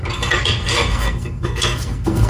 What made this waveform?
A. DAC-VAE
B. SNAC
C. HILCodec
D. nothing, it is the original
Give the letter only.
B